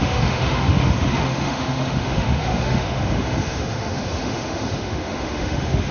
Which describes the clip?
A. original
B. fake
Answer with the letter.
B